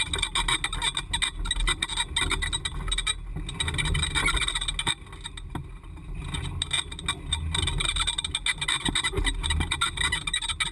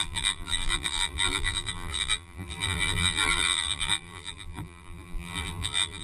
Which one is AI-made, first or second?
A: second